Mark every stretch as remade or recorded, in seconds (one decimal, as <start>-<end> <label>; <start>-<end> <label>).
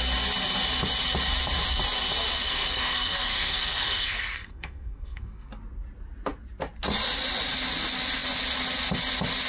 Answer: 0.0-2.4 recorded; 2.4-5.5 remade; 5.5-9.5 recorded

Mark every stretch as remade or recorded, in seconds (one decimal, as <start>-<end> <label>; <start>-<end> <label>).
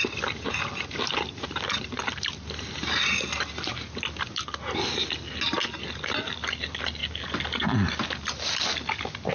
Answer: 0.0-9.3 recorded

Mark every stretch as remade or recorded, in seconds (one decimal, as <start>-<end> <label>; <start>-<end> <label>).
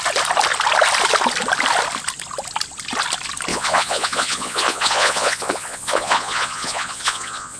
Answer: 0.0-3.5 recorded; 3.5-7.6 remade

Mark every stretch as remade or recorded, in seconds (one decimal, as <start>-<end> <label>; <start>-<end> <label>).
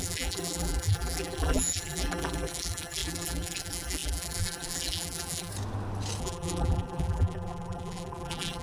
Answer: 0.0-5.5 remade; 5.5-6.2 recorded; 6.2-8.6 remade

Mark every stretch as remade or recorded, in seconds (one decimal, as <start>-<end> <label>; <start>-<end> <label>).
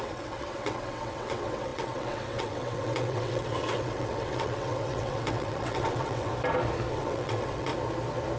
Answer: 0.0-6.3 remade; 6.3-6.9 recorded; 6.9-7.7 remade; 7.7-8.4 recorded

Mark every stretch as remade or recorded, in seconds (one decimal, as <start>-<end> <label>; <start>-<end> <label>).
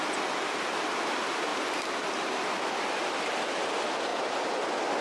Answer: 0.0-5.0 recorded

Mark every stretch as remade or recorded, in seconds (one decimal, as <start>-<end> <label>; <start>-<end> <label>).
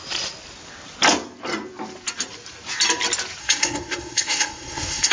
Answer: 0.0-3.4 recorded; 3.4-5.1 remade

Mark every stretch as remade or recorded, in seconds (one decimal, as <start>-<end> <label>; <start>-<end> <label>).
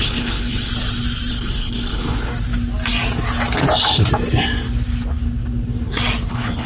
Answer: 0.0-0.7 remade; 0.7-1.3 recorded; 1.3-2.3 remade; 2.3-6.3 recorded; 6.3-6.7 remade